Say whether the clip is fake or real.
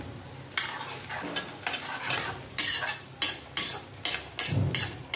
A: real